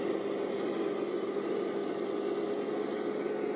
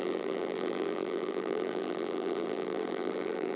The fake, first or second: second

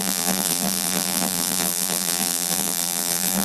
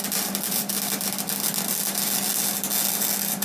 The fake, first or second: first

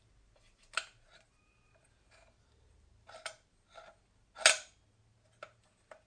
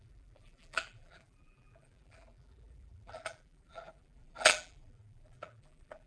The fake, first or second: second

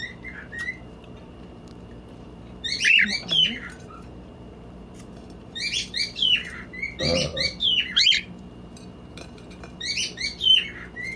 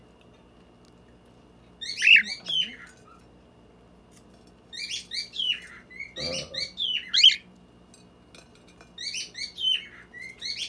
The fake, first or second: first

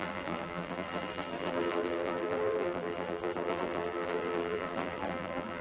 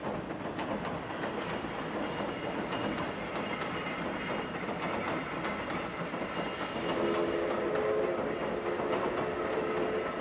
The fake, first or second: first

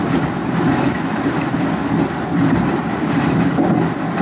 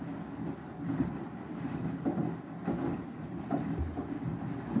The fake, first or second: first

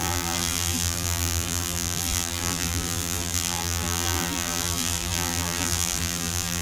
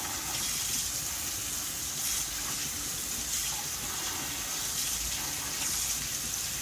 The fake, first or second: first